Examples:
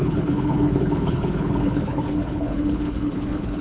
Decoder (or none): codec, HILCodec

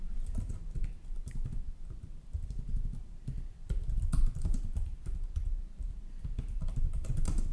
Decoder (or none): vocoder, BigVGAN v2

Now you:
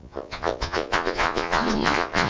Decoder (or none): vocoder, Vocos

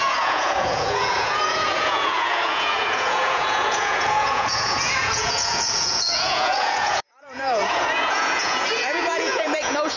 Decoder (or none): vocoder, Vocos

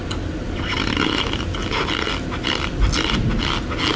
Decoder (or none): none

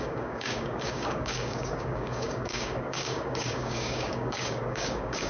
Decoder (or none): codec, DAC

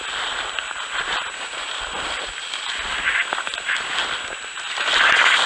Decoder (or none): none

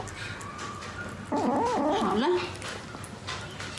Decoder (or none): none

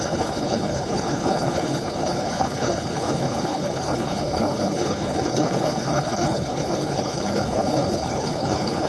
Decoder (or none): codec, HILCodec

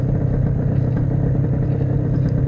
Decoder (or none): none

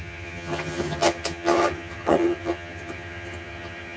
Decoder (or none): vocoder, HiFi-GAN